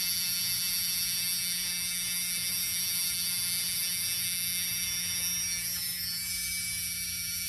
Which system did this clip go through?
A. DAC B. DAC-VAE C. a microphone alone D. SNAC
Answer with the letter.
B